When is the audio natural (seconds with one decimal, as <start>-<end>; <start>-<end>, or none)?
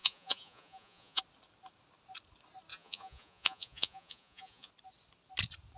1.2-2.7; 4.7-5.8